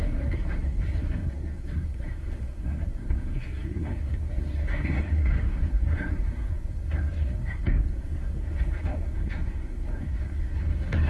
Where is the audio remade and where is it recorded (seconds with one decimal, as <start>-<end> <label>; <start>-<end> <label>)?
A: 0.0-11.1 remade